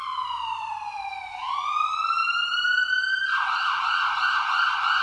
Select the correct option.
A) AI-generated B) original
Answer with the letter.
A